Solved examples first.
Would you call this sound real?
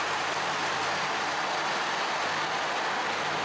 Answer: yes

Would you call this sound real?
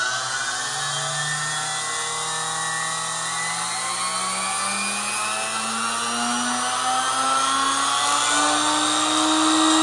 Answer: yes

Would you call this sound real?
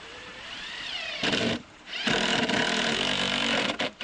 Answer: no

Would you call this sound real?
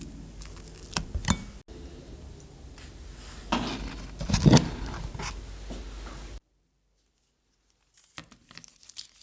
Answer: yes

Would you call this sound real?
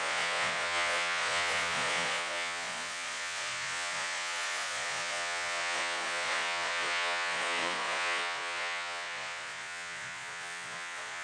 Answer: no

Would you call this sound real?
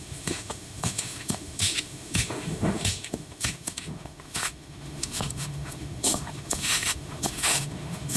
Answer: no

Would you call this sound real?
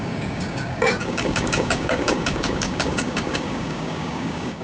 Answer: no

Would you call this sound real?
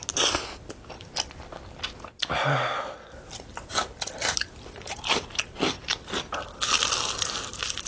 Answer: yes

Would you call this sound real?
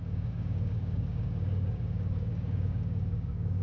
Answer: no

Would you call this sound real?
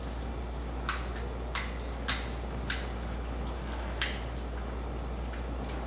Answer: yes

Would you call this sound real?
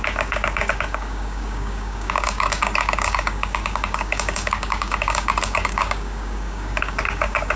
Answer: no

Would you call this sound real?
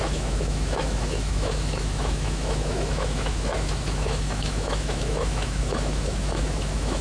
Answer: no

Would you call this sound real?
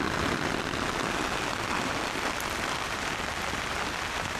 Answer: yes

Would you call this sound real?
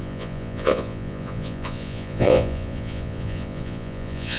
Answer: no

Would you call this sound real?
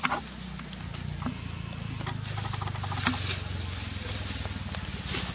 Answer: yes